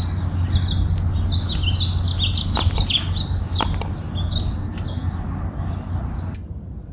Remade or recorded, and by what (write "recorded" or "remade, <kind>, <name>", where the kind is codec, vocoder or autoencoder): recorded